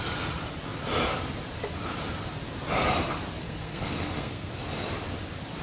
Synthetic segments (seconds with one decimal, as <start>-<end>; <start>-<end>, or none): 3.4-4.5